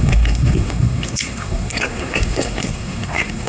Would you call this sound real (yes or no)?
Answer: no